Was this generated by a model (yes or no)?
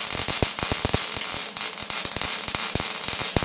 no